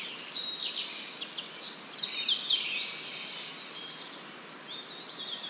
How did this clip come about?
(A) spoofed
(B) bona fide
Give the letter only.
B